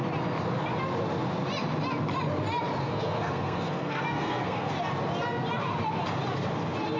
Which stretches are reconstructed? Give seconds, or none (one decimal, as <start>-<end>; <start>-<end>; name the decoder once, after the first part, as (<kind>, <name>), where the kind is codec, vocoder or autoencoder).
2.8-4.7 (codec, SNAC)